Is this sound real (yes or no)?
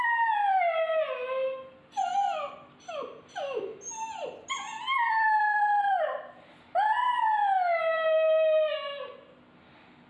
yes